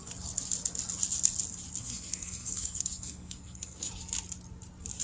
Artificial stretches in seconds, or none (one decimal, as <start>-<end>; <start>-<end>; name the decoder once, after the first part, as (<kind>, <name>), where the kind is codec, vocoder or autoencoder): 1.8-3.9 (codec, SNAC)